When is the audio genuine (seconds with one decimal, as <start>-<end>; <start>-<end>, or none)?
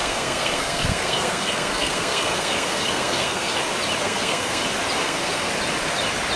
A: 3.6-4.0; 4.6-5.0; 5.5-6.4